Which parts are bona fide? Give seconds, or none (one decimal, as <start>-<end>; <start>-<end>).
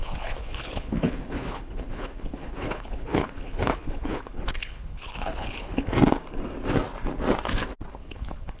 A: 5.9-7.9